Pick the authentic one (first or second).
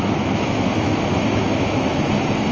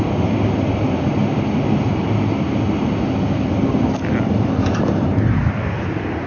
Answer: second